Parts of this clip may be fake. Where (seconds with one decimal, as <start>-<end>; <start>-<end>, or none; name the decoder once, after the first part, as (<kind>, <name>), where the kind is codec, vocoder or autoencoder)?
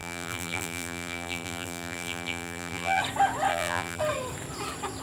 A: 0.0-3.0 (vocoder, BigVGAN v2); 3.5-4.0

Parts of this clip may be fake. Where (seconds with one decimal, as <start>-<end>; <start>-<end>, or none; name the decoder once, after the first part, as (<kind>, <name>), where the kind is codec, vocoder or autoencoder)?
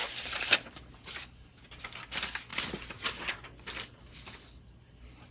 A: 0.0-1.8 (vocoder, BigVGAN v2); 2.5-3.3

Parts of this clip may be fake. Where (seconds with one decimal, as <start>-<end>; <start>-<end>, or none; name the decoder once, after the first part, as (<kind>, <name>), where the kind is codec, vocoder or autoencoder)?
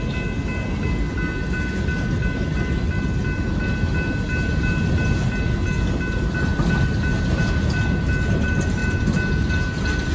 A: none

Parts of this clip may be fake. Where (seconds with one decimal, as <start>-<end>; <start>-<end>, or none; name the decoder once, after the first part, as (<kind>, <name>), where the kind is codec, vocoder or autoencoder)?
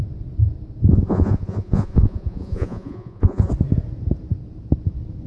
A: 0.9-3.5 (vocoder, Vocos)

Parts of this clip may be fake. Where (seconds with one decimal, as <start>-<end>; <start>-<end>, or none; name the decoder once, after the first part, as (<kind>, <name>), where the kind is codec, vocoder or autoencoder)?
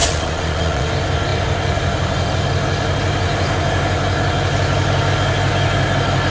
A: 0.0-0.9 (vocoder, Vocos)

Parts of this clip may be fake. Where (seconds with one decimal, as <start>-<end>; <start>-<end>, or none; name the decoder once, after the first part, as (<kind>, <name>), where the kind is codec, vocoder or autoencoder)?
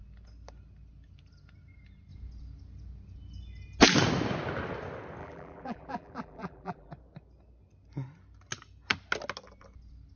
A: 5.2-6.9 (vocoder, BigVGAN v2)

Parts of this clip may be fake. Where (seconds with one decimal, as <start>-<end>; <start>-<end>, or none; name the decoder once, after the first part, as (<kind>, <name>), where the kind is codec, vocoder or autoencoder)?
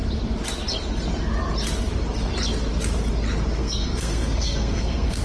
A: 3.6-5.2 (codec, SNAC)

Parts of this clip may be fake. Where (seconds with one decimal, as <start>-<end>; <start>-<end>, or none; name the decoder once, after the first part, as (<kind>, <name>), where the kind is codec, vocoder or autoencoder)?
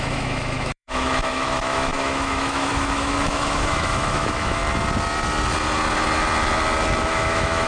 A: 0.0-4.6 (autoencoder, DAC-VAE); 7.0-7.7